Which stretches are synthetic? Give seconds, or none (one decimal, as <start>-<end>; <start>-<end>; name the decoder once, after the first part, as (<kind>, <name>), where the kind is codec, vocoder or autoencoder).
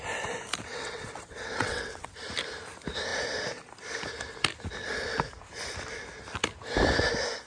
0.7-2.1 (vocoder, WaveNeXt)